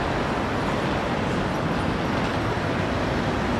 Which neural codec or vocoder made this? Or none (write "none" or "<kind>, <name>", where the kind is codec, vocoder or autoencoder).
none